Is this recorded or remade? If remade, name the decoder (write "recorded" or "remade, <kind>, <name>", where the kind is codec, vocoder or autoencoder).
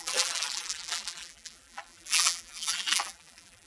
remade, vocoder, BigVGAN v2